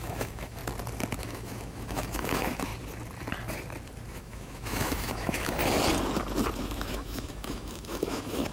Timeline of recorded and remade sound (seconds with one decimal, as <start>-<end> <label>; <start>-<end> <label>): 0.0-0.6 remade; 0.6-1.2 recorded; 1.2-2.7 remade; 2.7-4.1 recorded; 4.1-5.6 remade; 5.6-6.6 recorded; 6.6-8.5 remade